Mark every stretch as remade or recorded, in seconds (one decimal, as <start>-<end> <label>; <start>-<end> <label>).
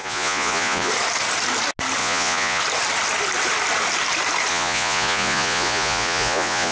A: 0.0-0.9 remade; 0.9-2.0 recorded; 2.0-2.6 remade; 2.6-4.5 recorded; 4.5-6.7 remade